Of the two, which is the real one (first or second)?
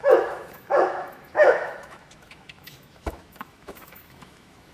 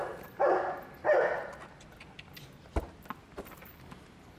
second